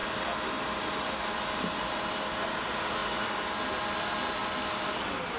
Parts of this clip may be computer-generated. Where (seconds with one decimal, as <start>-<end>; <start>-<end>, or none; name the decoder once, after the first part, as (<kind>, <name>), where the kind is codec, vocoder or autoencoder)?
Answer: none